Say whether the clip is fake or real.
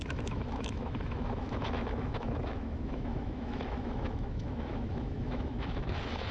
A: fake